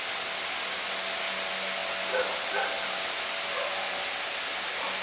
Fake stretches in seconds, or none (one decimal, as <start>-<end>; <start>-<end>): 1.8-3.8